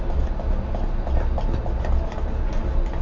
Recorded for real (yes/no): yes